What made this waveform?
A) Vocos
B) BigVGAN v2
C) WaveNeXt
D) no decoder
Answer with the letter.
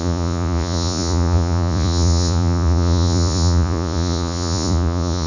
A